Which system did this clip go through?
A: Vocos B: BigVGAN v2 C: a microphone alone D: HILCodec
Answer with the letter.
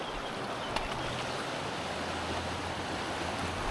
C